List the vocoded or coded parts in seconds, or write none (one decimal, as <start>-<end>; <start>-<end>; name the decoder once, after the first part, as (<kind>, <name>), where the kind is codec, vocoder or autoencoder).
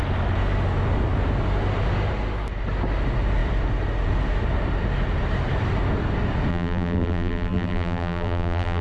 6.5-8.8 (vocoder, BigVGAN v2)